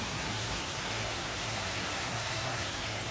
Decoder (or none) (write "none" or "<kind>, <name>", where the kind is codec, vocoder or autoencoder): codec, SNAC